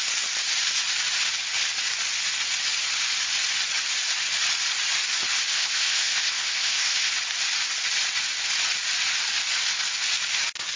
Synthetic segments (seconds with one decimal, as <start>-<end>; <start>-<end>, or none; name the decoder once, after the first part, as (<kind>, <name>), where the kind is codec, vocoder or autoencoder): 5.5-7.1 (codec, ZipCodec)